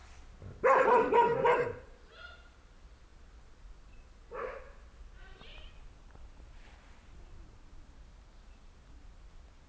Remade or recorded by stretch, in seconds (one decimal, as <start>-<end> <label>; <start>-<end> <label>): 0.0-9.7 recorded